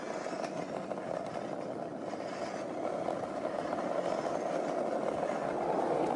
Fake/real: real